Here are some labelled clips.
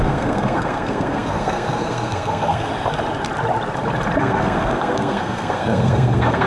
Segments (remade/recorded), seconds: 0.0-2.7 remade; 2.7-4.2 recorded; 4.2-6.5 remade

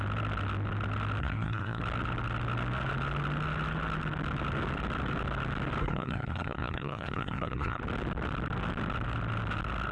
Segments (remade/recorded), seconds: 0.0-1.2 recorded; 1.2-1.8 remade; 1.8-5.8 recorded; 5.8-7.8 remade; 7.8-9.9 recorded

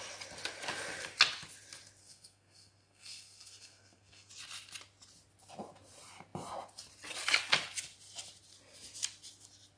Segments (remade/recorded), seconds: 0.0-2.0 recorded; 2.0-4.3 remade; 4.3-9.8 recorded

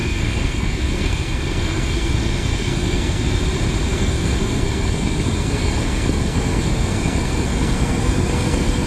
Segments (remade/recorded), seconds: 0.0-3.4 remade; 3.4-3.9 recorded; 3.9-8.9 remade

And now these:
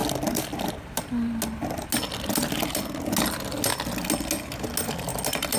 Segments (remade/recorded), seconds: 0.0-5.6 recorded

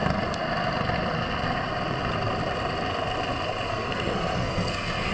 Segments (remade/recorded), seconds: 0.0-3.7 recorded; 3.7-5.1 remade

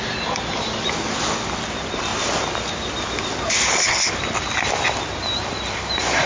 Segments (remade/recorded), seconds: 0.0-6.3 recorded

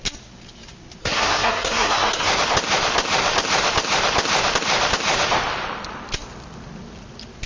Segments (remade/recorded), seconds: 0.0-1.0 recorded; 1.0-2.3 remade; 2.3-7.5 recorded